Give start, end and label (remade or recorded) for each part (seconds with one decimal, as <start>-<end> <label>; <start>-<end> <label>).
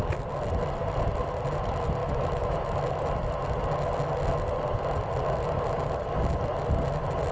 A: 0.0-2.0 recorded; 2.0-2.8 remade; 2.8-7.3 recorded